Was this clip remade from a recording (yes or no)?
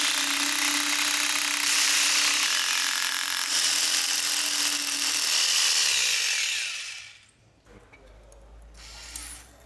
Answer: no